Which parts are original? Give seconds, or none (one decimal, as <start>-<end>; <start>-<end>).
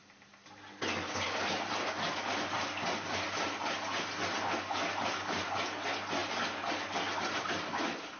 0.0-8.2